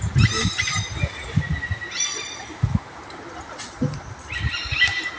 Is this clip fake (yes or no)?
no